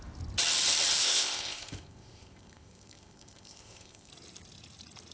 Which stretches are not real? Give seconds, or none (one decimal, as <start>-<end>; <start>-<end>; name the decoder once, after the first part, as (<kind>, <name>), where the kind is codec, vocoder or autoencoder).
1.0-4.1 (codec, ZipCodec)